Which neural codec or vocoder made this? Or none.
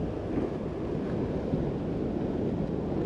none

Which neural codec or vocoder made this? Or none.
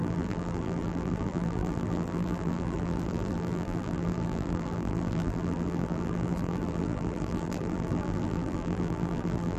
vocoder, BigVGAN v2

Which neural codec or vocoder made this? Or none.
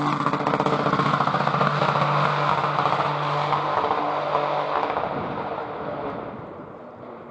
none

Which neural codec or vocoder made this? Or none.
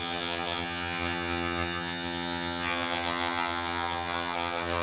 vocoder, HiFi-GAN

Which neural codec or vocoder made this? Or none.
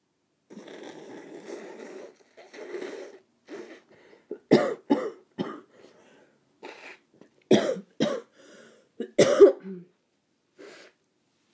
none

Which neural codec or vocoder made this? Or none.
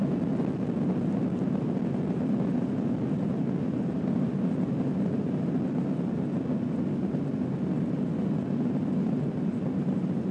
none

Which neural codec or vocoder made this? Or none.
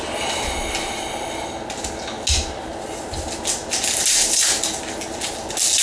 none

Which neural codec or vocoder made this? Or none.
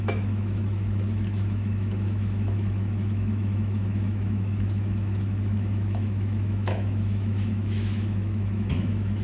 autoencoder, DAC-VAE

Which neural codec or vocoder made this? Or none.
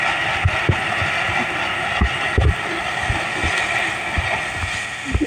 none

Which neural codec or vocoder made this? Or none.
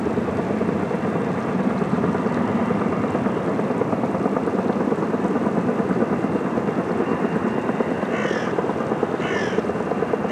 none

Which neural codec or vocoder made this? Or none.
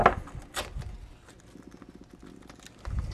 none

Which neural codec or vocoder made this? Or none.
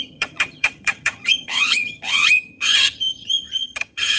vocoder, HiFi-GAN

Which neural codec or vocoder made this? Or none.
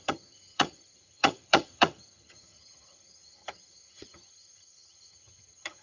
vocoder, HiFi-GAN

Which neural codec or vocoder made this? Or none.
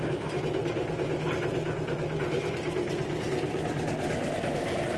none